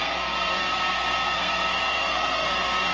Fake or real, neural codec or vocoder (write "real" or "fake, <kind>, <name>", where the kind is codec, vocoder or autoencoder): fake, codec, SNAC